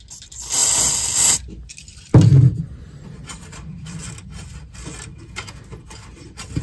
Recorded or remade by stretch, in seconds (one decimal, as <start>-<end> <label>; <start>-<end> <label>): 0.0-6.6 recorded